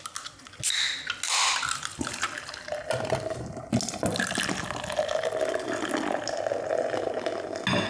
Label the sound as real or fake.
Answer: real